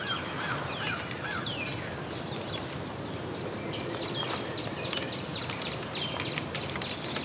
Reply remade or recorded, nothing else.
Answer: recorded